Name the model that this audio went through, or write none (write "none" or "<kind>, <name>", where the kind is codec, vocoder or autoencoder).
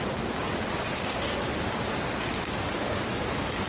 none